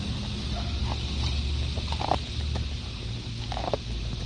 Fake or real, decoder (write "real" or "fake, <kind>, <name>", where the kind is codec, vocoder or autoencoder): real